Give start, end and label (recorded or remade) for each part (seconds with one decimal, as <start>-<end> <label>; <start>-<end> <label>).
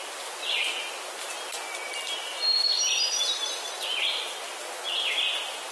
0.0-2.3 recorded; 2.3-5.7 remade